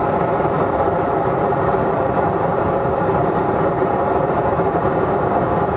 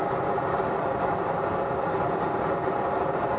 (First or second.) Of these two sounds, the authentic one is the second